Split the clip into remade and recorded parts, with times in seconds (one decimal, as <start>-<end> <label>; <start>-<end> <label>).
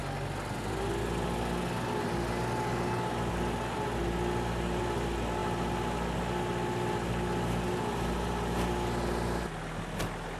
0.0-10.4 recorded